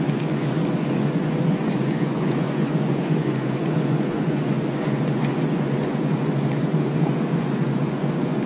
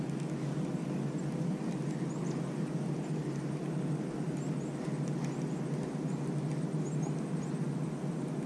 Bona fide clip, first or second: second